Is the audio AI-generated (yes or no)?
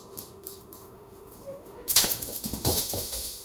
yes